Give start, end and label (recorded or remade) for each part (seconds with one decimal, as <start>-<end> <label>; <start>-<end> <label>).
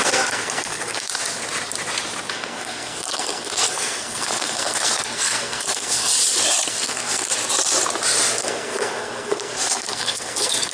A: 0.0-1.1 remade; 1.1-2.3 recorded; 2.3-6.1 remade; 6.1-6.7 recorded; 6.7-7.3 remade; 7.3-8.4 recorded; 8.4-10.7 remade